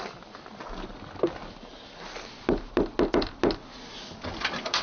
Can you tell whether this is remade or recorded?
recorded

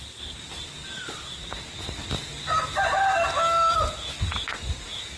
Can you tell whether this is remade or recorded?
recorded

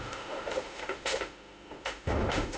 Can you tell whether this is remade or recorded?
remade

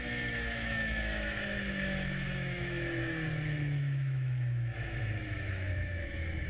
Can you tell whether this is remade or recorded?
remade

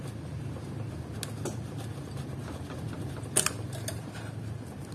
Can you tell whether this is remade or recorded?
recorded